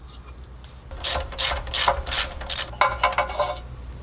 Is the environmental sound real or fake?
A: real